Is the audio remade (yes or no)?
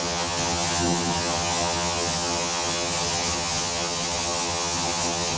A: yes